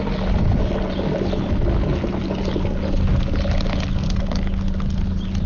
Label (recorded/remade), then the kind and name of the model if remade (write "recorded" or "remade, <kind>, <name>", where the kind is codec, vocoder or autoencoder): recorded